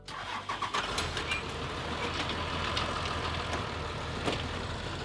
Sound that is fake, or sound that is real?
real